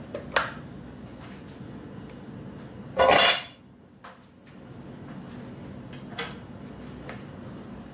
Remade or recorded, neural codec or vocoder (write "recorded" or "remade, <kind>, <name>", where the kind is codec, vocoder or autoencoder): recorded